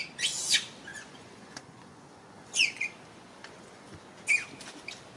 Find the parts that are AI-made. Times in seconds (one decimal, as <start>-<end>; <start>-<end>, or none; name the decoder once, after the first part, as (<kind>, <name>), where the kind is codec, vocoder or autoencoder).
0.9-4.0 (vocoder, Vocos)